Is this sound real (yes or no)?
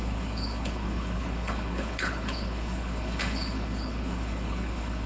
no